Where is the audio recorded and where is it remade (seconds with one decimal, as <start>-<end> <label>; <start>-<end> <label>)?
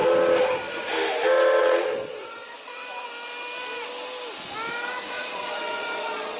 0.0-1.6 recorded; 1.6-2.7 remade; 2.7-5.1 recorded; 5.1-6.4 remade